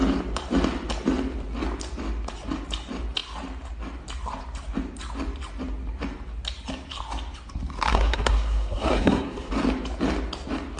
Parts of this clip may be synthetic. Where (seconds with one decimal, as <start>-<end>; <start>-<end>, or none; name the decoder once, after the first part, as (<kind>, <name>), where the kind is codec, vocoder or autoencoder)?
7.9-9.5 (codec, SNAC)